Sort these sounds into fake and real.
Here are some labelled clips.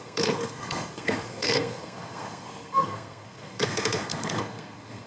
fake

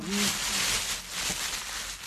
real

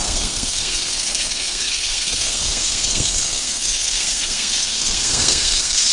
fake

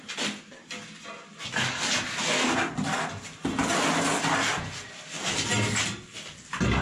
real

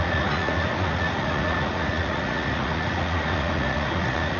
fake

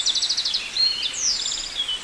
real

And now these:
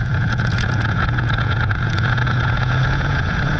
fake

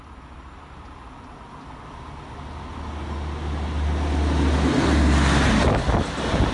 real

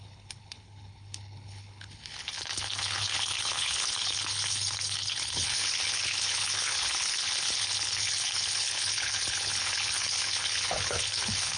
fake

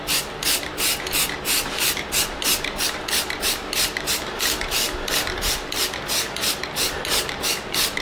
fake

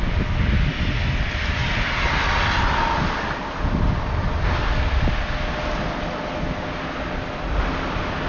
real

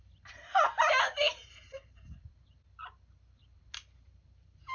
real